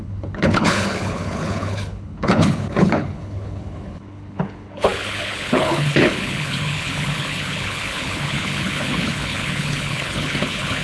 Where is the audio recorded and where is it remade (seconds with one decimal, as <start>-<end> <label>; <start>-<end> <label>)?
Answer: 0.0-10.8 remade